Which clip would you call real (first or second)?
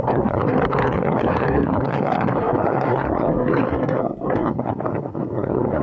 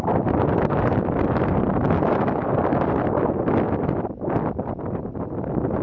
second